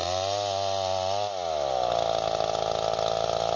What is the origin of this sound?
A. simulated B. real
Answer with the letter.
B